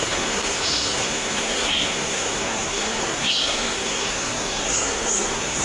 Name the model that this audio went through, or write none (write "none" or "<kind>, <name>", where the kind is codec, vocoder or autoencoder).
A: codec, SNAC